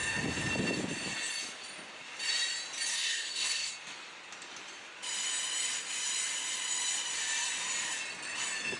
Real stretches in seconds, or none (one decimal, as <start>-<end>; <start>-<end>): 0.0-2.9; 3.7-8.8